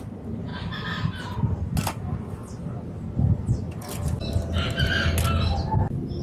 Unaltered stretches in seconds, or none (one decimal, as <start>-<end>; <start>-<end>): 0.0-6.2